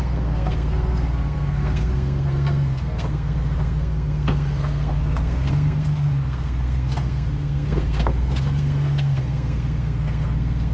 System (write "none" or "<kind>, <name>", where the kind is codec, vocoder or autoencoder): codec, SNAC